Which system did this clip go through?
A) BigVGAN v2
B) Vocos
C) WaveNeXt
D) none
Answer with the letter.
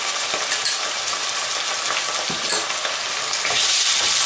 D